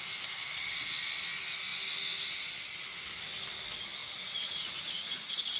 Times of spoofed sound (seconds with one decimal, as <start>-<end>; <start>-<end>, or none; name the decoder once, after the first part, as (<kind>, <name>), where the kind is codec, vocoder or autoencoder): 4.0-5.6 (vocoder, Vocos)